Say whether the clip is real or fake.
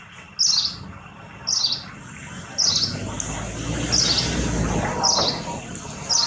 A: real